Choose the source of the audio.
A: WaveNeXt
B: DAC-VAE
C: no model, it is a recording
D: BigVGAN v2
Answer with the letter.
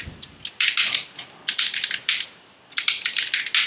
C